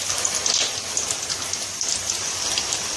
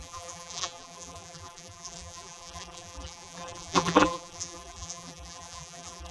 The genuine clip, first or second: first